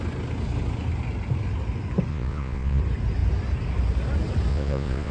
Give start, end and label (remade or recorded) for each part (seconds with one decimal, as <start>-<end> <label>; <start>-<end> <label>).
0.0-2.1 recorded; 2.1-2.8 remade; 2.8-4.5 recorded; 4.5-5.1 remade